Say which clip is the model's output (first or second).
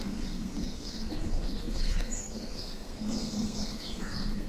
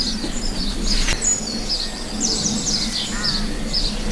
first